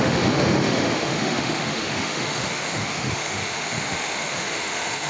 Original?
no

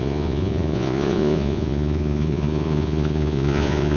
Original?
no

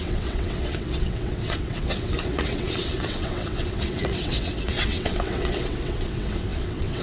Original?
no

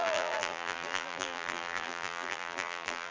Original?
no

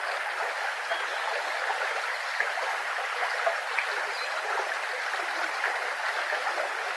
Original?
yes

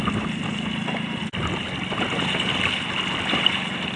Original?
yes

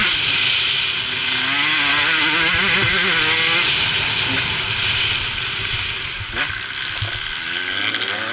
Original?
yes